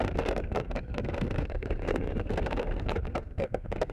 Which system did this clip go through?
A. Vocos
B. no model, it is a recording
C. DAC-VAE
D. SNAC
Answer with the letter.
D